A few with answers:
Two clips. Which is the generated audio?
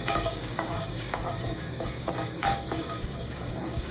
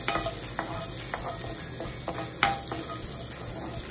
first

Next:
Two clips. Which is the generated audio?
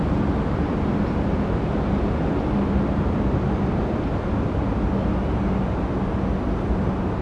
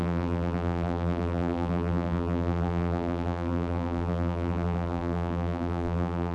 second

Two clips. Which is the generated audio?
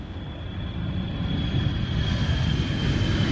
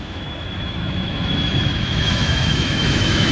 second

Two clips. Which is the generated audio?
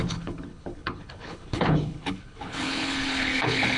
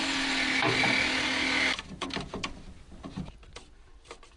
first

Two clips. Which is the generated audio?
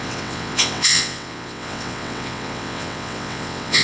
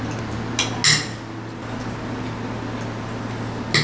first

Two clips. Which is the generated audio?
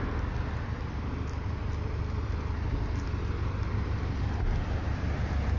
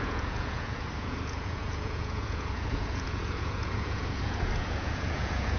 second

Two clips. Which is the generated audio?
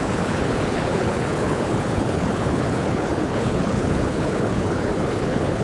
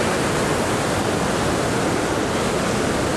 first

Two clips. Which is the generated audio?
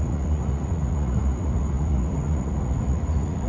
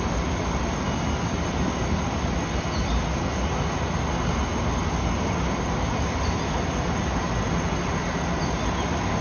first